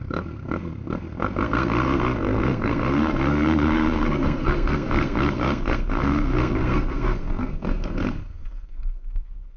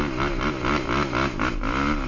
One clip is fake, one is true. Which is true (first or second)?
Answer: second